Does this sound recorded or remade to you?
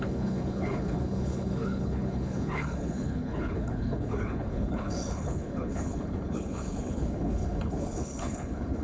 remade